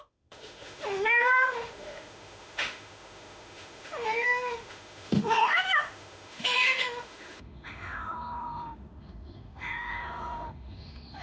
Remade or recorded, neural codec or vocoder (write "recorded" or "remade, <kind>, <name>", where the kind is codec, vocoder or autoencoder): remade, autoencoder, DAC-VAE